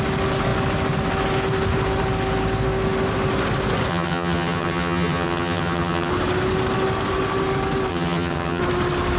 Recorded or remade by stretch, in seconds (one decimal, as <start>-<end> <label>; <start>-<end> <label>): 0.0-3.9 recorded; 3.9-6.1 remade; 6.1-7.9 recorded; 7.9-8.6 remade; 8.6-9.2 recorded